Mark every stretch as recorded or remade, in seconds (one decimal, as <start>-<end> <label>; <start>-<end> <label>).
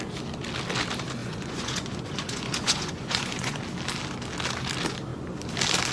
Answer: 0.0-1.2 recorded; 1.2-3.6 remade; 3.6-5.9 recorded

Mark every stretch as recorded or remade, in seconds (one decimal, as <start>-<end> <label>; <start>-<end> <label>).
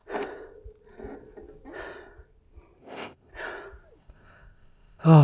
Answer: 0.0-2.8 recorded; 2.8-3.3 remade; 3.3-4.0 recorded; 4.0-5.2 remade